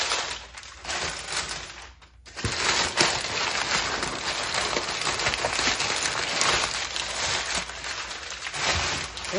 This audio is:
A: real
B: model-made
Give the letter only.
A